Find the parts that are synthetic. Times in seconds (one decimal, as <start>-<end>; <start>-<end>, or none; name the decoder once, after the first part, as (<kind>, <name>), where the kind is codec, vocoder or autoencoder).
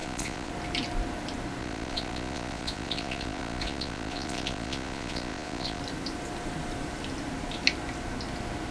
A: 0.0-0.5 (vocoder, Vocos); 1.6-5.8